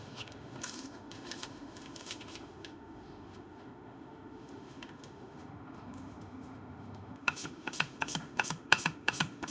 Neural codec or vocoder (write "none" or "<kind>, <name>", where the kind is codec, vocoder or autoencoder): autoencoder, DAC-VAE